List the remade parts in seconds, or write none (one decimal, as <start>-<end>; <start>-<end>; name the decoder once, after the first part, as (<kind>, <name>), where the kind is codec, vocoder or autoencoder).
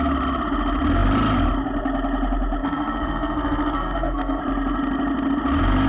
2.6-4.4 (codec, SNAC)